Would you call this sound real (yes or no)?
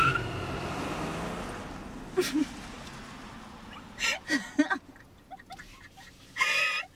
yes